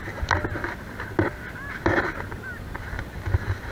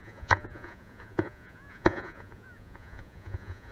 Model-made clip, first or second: second